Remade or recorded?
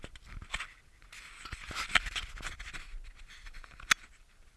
recorded